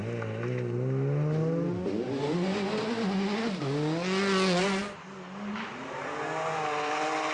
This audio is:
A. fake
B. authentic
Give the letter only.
B